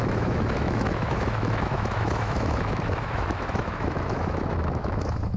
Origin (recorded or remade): remade